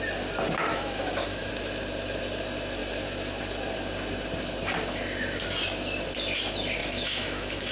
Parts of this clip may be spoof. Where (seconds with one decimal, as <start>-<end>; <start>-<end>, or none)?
0.7-1.5; 6.8-7.7